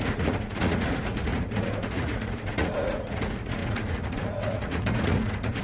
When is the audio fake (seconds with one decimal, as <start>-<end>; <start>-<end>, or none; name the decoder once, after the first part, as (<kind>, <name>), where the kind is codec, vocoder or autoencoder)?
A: 0.0-5.6 (vocoder, Vocos)